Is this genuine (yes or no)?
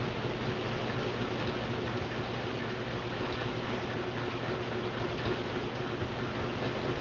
yes